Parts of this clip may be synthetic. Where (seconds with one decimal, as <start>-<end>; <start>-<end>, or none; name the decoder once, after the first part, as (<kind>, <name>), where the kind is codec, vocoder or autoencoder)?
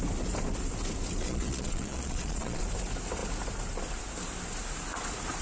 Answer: 1.2-2.6 (vocoder, Vocos)